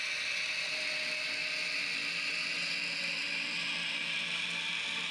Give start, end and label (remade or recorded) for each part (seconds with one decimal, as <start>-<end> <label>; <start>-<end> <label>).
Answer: 0.0-5.1 recorded